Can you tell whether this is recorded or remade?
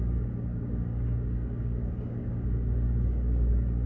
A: remade